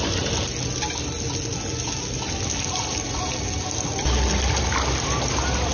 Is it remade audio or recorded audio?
recorded